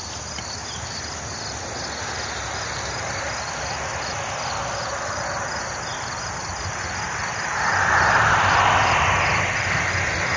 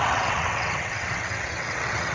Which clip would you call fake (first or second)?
second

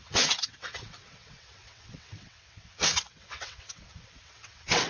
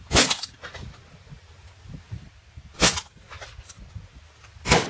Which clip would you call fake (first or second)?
first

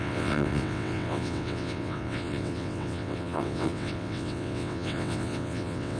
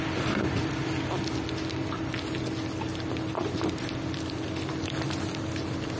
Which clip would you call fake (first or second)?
first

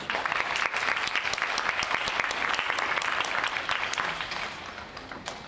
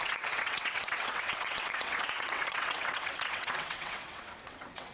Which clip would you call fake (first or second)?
second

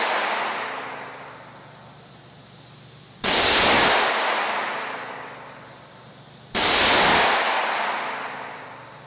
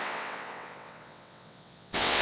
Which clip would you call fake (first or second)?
second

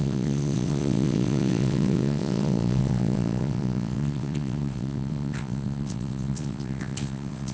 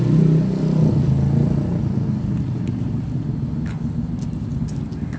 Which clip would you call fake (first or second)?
first